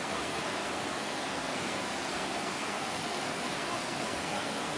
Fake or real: fake